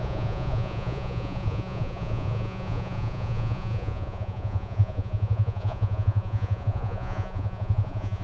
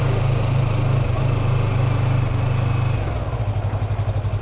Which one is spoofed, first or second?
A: first